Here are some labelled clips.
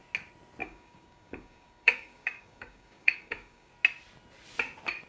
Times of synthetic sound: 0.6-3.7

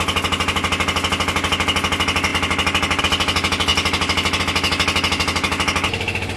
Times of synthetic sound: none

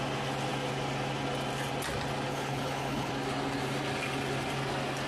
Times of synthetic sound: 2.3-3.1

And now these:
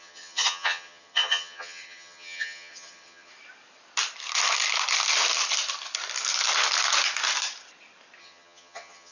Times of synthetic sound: 0.0-3.3; 8.2-9.1

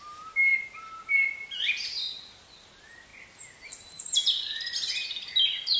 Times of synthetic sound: none

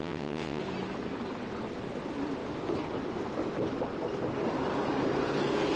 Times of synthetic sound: 0.0-0.6